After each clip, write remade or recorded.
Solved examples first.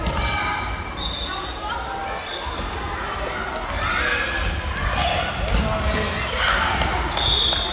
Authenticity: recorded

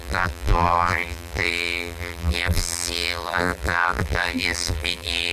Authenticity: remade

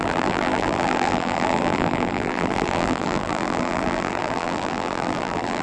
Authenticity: remade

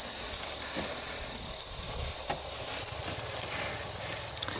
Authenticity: recorded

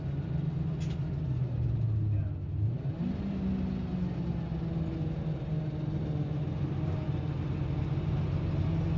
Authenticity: recorded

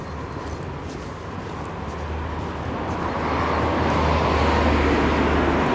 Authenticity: recorded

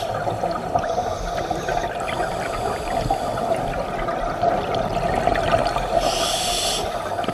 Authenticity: recorded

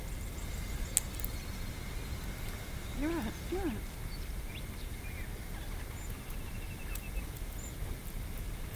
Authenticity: recorded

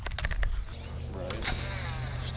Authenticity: recorded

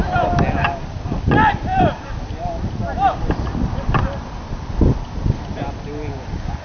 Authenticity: recorded